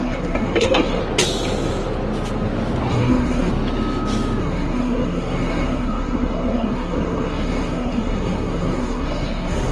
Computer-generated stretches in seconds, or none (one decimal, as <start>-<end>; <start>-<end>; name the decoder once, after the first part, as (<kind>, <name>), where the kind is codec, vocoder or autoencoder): 0.0-1.0 (codec, SNAC); 2.9-3.5; 4.4-9.7